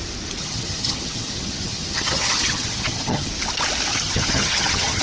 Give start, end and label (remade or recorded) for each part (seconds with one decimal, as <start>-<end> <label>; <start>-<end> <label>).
0.0-0.4 recorded; 0.4-3.3 remade; 3.3-3.9 recorded; 3.9-5.0 remade